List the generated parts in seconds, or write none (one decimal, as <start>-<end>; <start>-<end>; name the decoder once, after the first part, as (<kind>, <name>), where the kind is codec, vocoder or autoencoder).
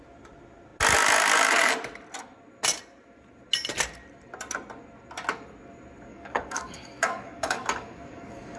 6.1-8.6 (codec, DAC)